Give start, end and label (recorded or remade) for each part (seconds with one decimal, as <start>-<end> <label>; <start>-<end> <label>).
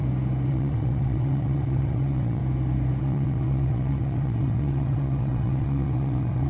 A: 0.0-0.5 recorded; 0.5-2.4 remade; 2.4-3.0 recorded; 3.0-6.5 remade